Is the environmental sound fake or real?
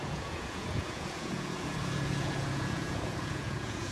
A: fake